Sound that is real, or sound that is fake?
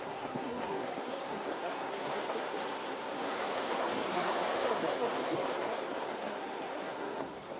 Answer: fake